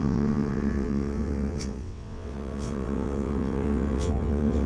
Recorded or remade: remade